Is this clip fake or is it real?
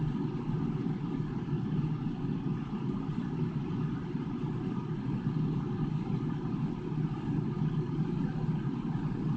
real